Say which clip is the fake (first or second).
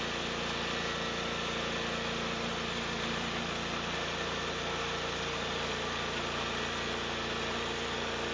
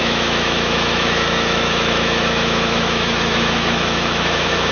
second